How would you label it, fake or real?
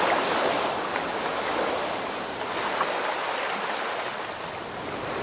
real